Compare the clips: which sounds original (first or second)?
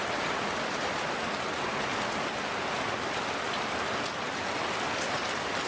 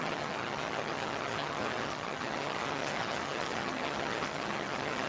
first